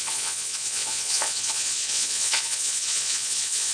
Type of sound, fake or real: fake